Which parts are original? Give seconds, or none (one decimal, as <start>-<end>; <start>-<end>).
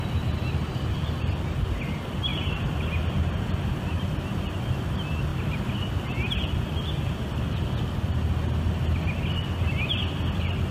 0.0-5.3; 5.9-10.7